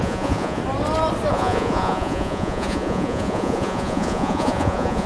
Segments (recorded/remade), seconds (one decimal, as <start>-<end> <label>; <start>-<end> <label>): 0.0-0.6 remade; 0.6-1.3 recorded; 1.3-5.1 remade